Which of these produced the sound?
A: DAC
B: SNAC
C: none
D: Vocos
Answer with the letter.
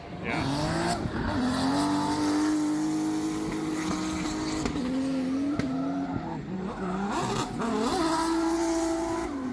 C